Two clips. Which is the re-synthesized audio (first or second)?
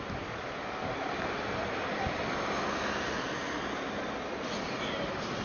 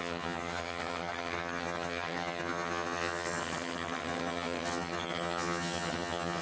second